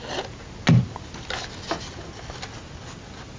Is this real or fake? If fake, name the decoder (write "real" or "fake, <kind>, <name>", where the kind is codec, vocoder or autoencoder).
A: real